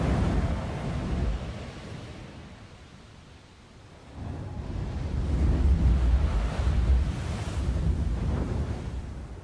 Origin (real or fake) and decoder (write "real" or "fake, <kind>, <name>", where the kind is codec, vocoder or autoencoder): real